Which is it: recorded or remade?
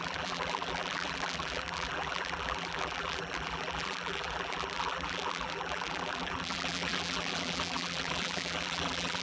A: remade